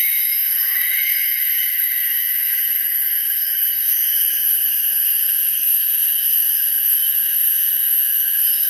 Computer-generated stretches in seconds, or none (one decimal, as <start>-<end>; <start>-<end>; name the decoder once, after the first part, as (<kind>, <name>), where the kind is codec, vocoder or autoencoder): 0.0-8.7 (autoencoder, DAC-VAE)